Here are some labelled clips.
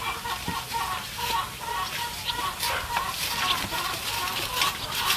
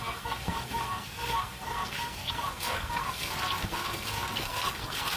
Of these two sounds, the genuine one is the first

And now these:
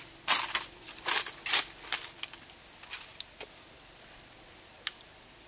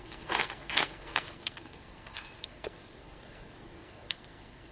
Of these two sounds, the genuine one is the first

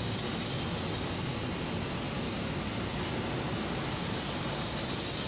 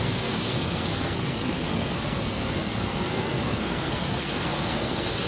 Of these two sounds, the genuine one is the first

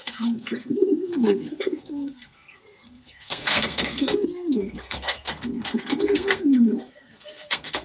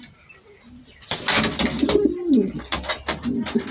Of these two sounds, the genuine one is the second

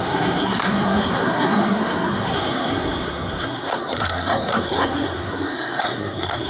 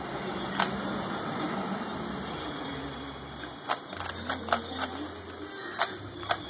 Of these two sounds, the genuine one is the second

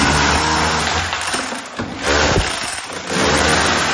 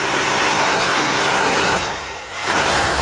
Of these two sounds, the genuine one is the first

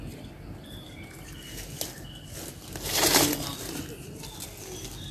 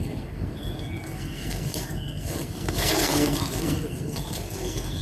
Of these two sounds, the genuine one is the first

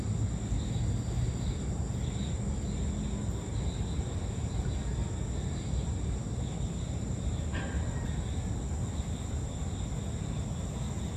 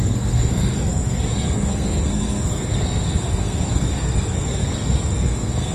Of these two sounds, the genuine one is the first